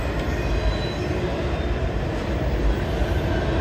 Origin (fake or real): real